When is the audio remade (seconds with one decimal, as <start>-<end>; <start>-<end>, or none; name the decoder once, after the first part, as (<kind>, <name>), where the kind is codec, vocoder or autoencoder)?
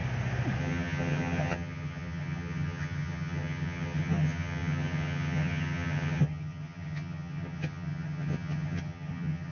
0.6-9.5 (vocoder, HiFi-GAN)